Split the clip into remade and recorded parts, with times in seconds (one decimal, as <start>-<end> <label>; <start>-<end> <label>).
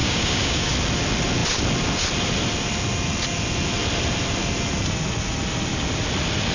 0.0-0.7 remade; 0.7-6.5 recorded